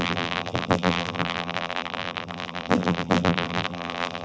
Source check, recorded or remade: remade